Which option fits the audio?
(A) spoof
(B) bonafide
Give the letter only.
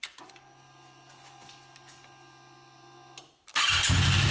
B